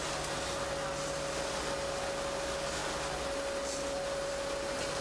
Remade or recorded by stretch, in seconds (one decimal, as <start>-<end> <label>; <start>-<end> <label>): 0.0-5.0 recorded

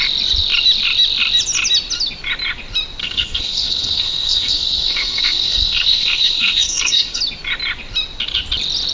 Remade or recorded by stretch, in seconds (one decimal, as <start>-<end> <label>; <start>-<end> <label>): 0.0-3.0 recorded; 3.0-7.2 remade; 7.2-8.9 recorded

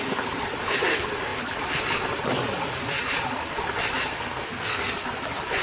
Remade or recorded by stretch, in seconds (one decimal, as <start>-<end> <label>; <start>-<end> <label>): 0.0-4.1 recorded; 4.1-4.9 remade; 4.9-5.6 recorded

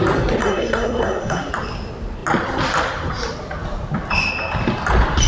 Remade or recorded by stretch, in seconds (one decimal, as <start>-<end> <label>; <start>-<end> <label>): 0.0-0.4 recorded; 0.4-1.5 remade; 1.5-5.3 recorded